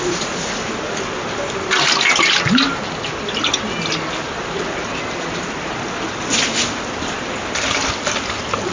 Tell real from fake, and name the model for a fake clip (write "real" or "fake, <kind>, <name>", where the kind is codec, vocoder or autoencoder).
real